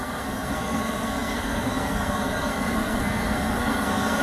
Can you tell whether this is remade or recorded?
remade